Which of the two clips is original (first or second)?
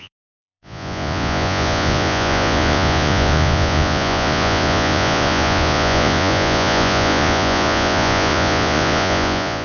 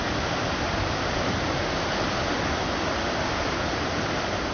second